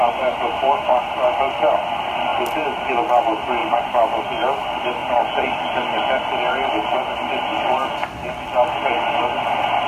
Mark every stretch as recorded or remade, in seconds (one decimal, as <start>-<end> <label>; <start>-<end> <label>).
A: 0.0-3.6 recorded; 3.6-4.2 remade; 4.2-9.9 recorded